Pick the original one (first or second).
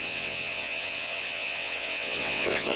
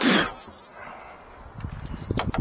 second